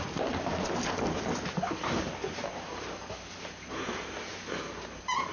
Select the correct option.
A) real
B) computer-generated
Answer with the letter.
A